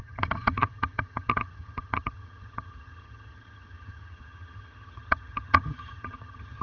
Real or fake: fake